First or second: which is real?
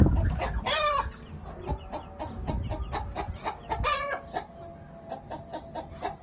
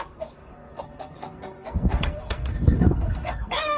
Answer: first